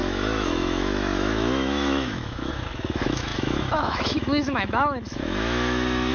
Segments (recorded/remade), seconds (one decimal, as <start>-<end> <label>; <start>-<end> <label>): 0.0-6.1 remade